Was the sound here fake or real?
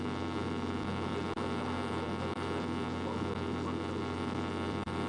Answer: real